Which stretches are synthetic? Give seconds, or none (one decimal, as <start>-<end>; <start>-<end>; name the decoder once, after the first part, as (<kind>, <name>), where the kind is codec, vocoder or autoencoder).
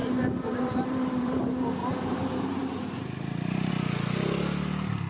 0.0-1.4 (vocoder, BigVGAN v2); 1.8-3.7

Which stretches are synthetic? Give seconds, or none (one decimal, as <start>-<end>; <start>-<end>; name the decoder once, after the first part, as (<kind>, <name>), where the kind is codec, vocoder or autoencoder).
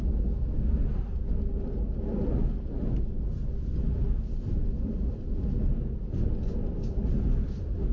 none